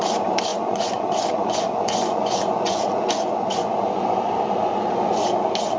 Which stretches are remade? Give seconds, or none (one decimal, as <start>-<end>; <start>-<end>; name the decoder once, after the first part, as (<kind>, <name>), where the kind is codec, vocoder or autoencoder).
0.5-4.0 (vocoder, Vocos)